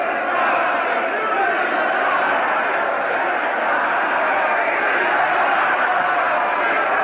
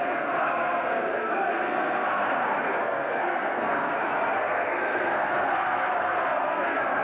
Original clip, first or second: first